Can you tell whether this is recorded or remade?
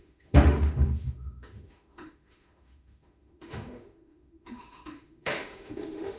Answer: remade